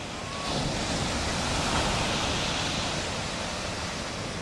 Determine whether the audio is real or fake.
real